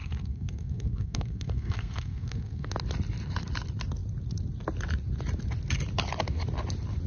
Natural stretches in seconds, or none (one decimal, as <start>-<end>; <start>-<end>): 2.7-7.1